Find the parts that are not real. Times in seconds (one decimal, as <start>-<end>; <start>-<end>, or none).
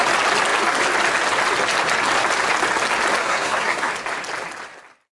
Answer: 3.2-3.9